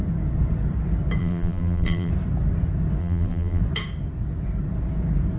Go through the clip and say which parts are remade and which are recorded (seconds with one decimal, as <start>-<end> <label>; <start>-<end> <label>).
0.0-1.2 recorded; 1.2-2.1 remade; 2.1-3.0 recorded; 3.0-3.6 remade; 3.6-5.4 recorded